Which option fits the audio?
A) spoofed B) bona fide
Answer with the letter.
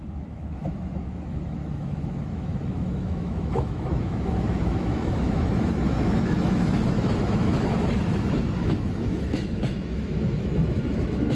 A